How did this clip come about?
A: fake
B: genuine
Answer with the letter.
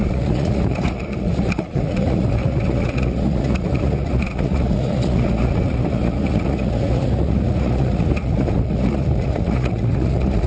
A